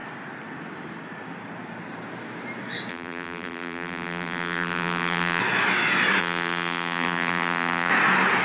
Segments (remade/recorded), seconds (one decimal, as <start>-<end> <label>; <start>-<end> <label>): 0.0-2.9 recorded; 2.9-5.4 remade; 5.4-6.2 recorded; 6.2-7.9 remade; 7.9-8.4 recorded